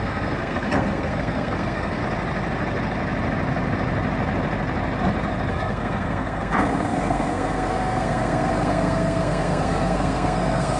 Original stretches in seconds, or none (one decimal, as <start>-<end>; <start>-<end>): 2.0-5.5